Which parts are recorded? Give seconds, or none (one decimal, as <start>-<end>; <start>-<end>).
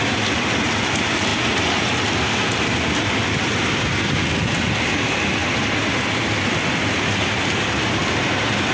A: 0.0-8.7